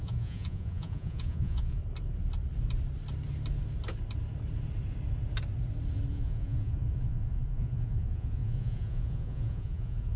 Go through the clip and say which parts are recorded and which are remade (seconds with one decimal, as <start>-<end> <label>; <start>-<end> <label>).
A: 0.0-1.8 remade; 1.8-6.1 recorded; 6.1-10.2 remade